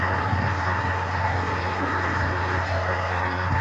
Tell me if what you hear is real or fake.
fake